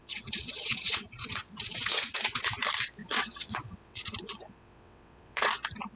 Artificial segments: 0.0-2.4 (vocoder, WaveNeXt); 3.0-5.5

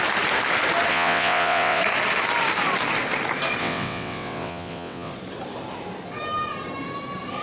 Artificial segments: 0.9-1.8 (vocoder, WaveNeXt); 3.6-5.1

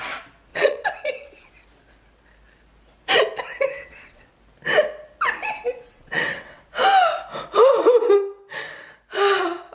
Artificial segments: 0.5-1.5 (vocoder, WaveNeXt); 3.5-4.3; 5.4-6.6

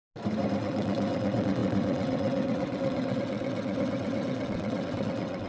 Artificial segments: 0.6-5.5 (vocoder, WaveNeXt)

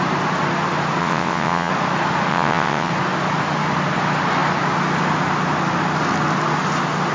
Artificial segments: 1.0-1.7 (vocoder, WaveNeXt); 2.3-2.9

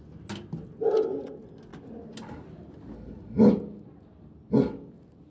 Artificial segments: none

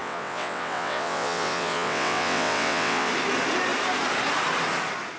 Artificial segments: 0.0-3.1 (vocoder, WaveNeXt)

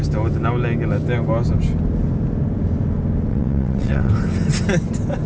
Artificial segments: 3.3-4.1 (vocoder, WaveNeXt)